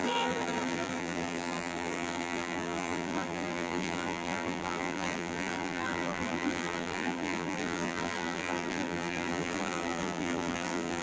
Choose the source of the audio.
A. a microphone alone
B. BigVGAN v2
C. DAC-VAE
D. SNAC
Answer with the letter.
B